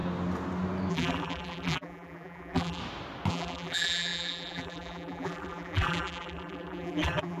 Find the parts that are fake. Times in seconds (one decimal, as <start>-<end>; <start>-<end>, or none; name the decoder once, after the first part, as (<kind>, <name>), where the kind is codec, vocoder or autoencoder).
0.9-2.8 (vocoder, BigVGAN v2); 3.3-7.4